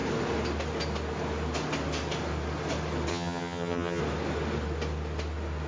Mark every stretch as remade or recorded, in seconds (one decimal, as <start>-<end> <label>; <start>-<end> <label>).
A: 0.0-3.1 recorded; 3.1-4.0 remade; 4.0-5.7 recorded